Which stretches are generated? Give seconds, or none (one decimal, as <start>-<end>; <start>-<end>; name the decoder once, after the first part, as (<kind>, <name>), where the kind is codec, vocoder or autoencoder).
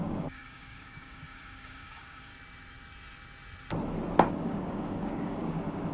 0.0-2.3 (codec, DAC); 4.3-5.9